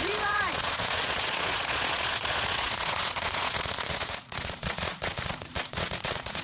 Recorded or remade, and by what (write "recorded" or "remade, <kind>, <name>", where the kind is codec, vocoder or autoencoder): remade, vocoder, Vocos